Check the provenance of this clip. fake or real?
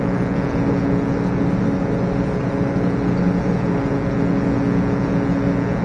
real